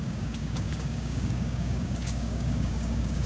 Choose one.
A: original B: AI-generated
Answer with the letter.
B